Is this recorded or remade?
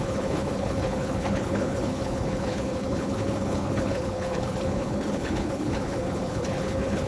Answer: remade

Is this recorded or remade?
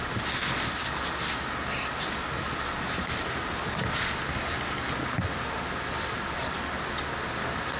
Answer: recorded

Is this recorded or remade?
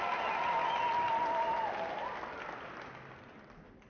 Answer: recorded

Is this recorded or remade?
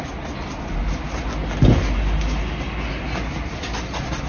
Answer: recorded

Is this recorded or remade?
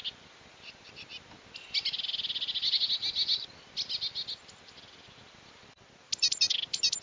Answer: recorded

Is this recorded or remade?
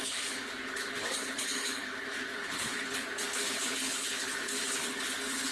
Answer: remade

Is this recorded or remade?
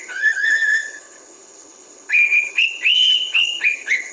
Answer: remade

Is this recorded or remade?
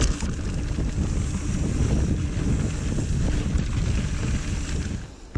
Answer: recorded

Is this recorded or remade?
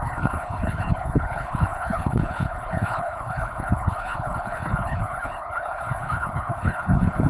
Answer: remade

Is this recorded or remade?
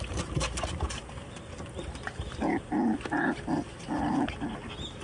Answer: recorded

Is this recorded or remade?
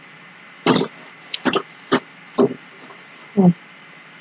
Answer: recorded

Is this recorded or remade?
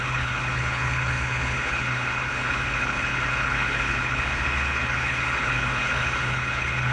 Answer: remade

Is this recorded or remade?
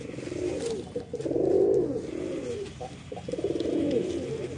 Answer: recorded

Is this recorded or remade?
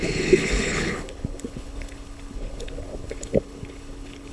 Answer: remade